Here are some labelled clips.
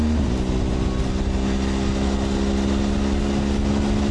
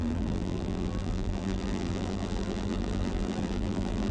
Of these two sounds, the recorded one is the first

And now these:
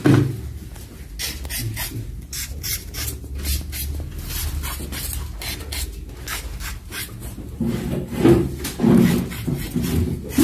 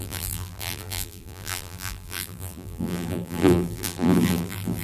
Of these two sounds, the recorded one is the first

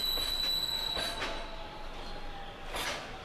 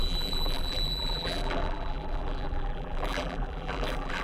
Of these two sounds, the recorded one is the first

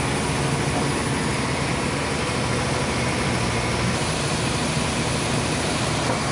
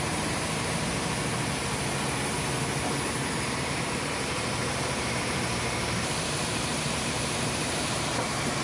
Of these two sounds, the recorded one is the first